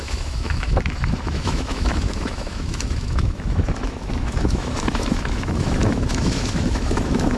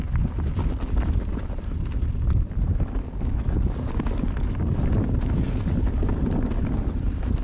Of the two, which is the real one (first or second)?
second